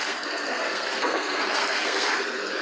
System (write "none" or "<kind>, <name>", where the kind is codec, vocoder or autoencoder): codec, SNAC